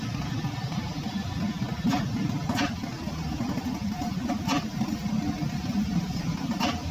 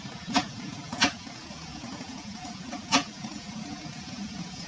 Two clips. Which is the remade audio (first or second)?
second